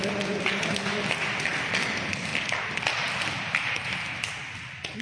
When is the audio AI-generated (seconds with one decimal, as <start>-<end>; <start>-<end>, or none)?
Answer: none